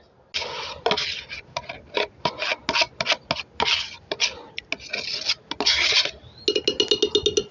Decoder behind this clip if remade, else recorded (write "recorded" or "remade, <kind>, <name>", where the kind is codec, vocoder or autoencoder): recorded